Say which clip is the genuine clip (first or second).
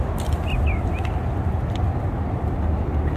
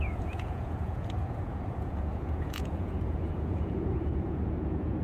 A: first